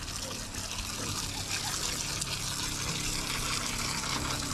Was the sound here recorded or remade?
recorded